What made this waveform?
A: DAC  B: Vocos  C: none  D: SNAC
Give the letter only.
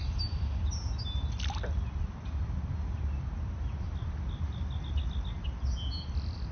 C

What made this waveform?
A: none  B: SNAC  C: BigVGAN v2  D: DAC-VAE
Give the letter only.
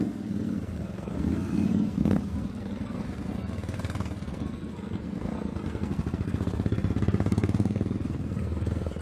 B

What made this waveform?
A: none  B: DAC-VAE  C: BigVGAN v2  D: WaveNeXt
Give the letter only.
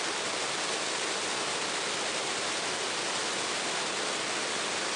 A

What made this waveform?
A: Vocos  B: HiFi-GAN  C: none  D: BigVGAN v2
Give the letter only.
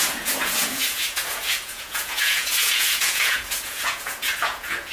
A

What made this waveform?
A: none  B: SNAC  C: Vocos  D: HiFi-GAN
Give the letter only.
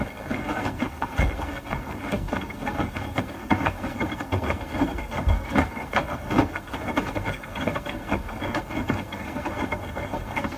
B